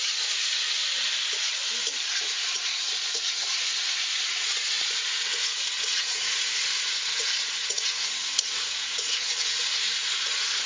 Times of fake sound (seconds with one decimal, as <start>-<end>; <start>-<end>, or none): 0.0-0.6; 1.2-1.6; 2.2-10.7